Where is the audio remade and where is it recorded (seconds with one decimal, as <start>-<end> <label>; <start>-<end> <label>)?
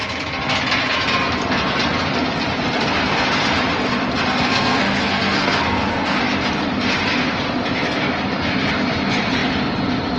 0.0-4.5 recorded; 4.5-6.2 remade; 6.2-10.2 recorded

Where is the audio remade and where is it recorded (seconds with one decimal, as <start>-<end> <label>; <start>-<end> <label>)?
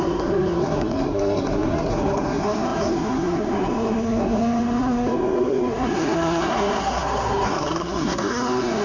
0.0-8.8 remade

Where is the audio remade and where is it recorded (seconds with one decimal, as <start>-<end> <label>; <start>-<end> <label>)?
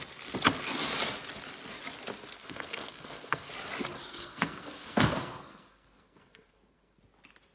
0.0-2.4 recorded; 2.4-3.5 remade; 3.5-4.1 recorded; 4.1-7.0 remade; 7.0-7.5 recorded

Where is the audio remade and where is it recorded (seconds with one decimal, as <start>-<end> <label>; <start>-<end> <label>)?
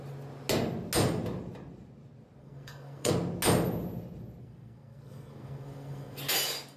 0.0-2.4 recorded; 2.4-3.1 remade; 3.1-4.4 recorded; 4.4-6.2 remade; 6.2-6.8 recorded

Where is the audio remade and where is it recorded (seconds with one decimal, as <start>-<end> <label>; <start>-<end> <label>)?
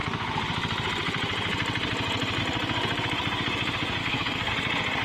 0.0-4.0 recorded; 4.0-4.5 remade; 4.5-5.0 recorded